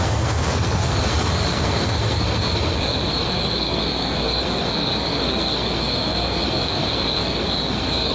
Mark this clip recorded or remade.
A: remade